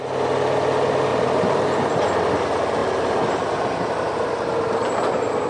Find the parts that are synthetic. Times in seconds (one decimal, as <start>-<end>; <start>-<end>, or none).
1.1-1.7; 2.8-4.0